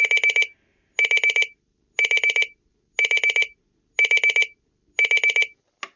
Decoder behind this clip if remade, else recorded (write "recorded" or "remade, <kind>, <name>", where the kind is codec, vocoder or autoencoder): recorded